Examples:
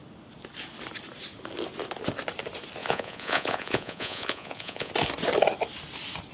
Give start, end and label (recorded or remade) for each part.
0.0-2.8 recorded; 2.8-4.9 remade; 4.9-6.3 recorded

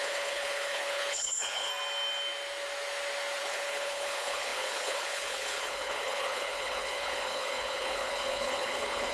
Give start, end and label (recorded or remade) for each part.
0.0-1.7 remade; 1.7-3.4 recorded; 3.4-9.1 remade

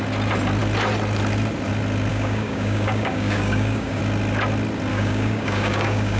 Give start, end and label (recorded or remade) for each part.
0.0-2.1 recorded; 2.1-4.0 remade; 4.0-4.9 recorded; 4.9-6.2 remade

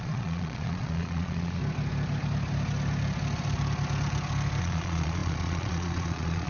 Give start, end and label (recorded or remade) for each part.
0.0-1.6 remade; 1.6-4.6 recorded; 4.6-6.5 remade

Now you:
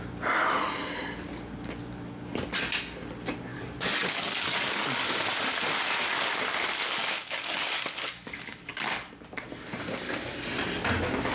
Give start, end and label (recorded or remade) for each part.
0.0-3.5 recorded; 3.5-5.0 remade; 5.0-7.0 recorded; 7.0-9.1 remade; 9.1-11.3 recorded

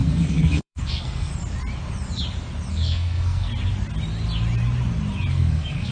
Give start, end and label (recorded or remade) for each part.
0.0-1.3 remade; 1.3-2.7 recorded; 2.7-3.5 remade; 3.5-5.3 recorded; 5.3-5.9 remade

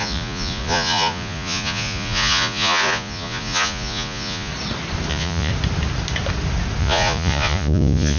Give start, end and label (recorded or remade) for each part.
0.0-4.5 remade; 4.5-5.1 recorded; 5.1-5.5 remade; 5.5-6.8 recorded; 6.8-8.2 remade

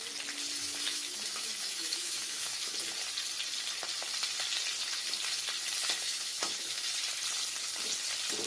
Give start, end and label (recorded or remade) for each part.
0.0-0.6 recorded; 0.6-2.7 remade; 2.7-6.0 recorded; 6.0-6.8 remade; 6.8-8.5 recorded